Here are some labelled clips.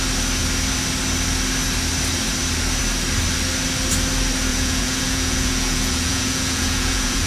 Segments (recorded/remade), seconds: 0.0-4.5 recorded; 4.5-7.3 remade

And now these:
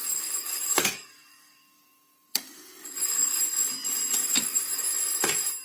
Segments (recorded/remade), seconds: 0.0-3.4 remade; 3.4-4.2 recorded; 4.2-4.9 remade; 4.9-5.6 recorded

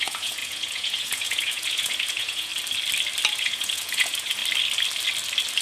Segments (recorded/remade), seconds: 0.0-2.5 remade; 2.5-3.3 recorded; 3.3-4.4 remade; 4.4-5.6 recorded

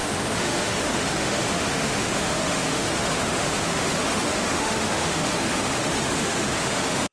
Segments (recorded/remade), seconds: 0.0-7.1 remade

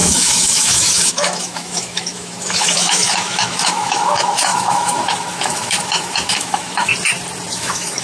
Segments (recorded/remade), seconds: 0.0-6.9 remade; 6.9-7.5 recorded; 7.5-8.0 remade

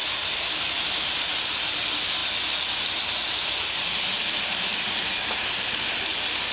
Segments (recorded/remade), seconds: 0.0-0.8 recorded; 0.8-2.2 remade; 2.2-2.8 recorded; 2.8-6.5 remade

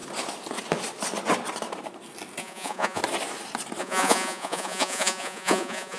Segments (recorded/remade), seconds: 0.0-2.4 recorded; 2.4-3.0 remade; 3.0-3.8 recorded; 3.8-6.0 remade